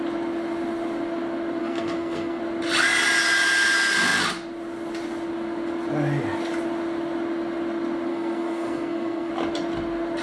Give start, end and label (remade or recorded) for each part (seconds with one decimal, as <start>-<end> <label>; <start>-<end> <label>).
0.0-1.6 recorded; 1.6-2.4 remade; 2.4-8.1 recorded; 8.1-9.3 remade; 9.3-10.2 recorded